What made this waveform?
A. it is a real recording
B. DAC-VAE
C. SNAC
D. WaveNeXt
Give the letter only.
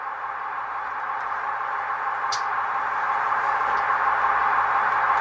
A